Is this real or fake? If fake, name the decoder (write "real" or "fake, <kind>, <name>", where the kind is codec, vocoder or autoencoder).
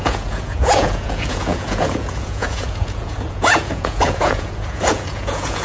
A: fake, vocoder, Vocos